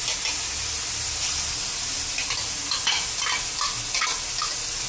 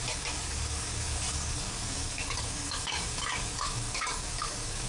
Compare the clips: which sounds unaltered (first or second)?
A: first